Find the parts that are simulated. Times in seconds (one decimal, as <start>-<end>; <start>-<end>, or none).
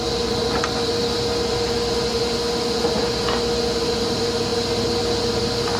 none